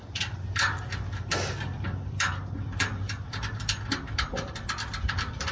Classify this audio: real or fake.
fake